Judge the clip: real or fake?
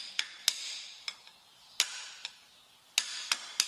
real